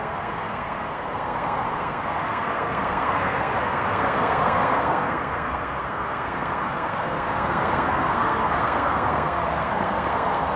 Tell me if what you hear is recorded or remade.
remade